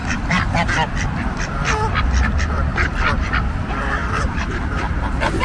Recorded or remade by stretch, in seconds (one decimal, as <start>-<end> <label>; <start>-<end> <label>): 0.0-2.0 remade; 2.0-2.7 recorded; 2.7-3.6 remade; 3.6-4.0 recorded; 4.0-5.4 remade